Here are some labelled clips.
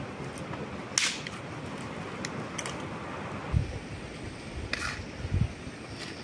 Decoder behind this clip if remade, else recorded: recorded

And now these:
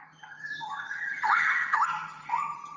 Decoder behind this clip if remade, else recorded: remade, vocoder, HiFi-GAN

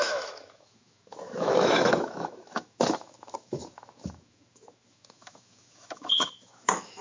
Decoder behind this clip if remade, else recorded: remade, autoencoder, DAC-VAE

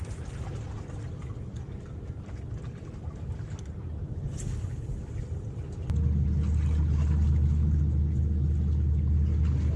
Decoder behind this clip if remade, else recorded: recorded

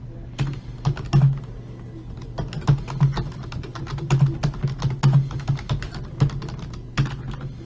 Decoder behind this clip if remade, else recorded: recorded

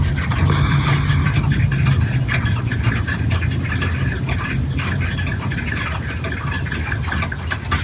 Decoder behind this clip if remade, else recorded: recorded